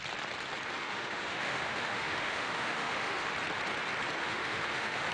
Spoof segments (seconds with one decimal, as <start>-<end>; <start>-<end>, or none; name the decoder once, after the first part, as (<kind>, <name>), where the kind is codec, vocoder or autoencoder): 0.8-3.3 (autoencoder, DAC-VAE); 4.2-5.1